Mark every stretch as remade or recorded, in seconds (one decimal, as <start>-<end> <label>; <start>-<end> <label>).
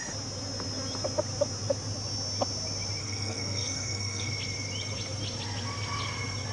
0.0-3.0 recorded; 3.0-4.3 remade; 4.3-6.5 recorded